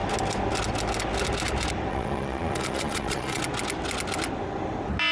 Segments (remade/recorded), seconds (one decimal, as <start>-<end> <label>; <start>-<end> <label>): 0.0-1.9 recorded; 1.9-3.4 remade; 3.4-5.1 recorded